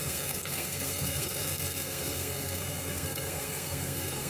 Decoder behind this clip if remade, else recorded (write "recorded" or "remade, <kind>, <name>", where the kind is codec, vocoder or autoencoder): remade, codec, SNAC